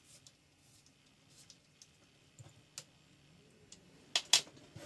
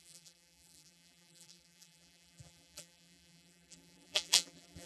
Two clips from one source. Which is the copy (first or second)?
second